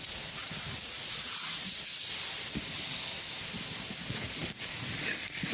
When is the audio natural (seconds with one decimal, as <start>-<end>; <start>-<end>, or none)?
1.8-5.5